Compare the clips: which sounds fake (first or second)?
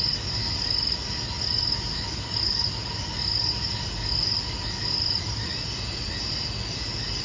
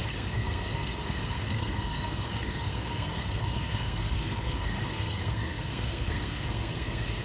second